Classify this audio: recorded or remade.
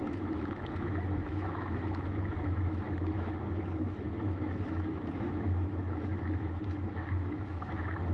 remade